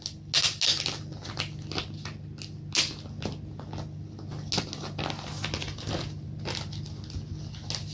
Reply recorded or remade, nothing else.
recorded